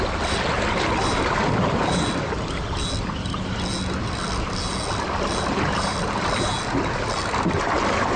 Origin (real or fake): real